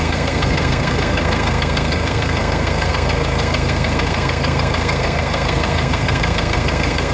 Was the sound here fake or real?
fake